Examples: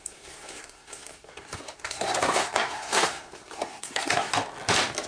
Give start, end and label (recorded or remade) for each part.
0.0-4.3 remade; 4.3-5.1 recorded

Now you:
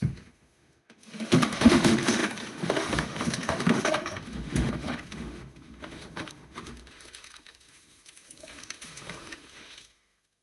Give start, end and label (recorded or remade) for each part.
0.0-10.4 remade

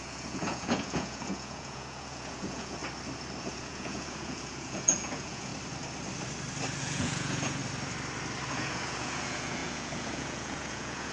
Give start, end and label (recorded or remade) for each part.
0.0-2.8 remade; 2.8-3.4 recorded; 3.4-5.5 remade; 5.5-6.8 recorded; 6.8-7.6 remade; 7.6-8.5 recorded; 8.5-11.1 remade

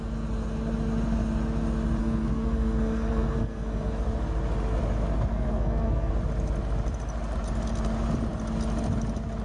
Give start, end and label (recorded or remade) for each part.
0.0-2.0 recorded; 2.0-3.9 remade; 3.9-5.3 recorded; 5.3-6.1 remade; 6.1-9.4 recorded

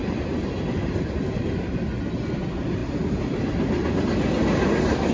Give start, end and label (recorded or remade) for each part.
0.0-5.1 recorded

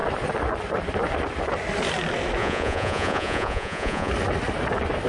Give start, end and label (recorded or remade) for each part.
0.0-2.4 recorded; 2.4-4.1 remade; 4.1-5.1 recorded